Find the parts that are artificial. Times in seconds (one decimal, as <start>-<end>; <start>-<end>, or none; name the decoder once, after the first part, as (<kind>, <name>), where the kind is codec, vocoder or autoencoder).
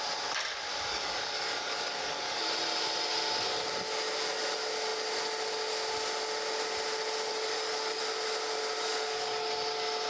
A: 0.9-2.5 (codec, DAC); 7.3-8.0; 8.9-9.5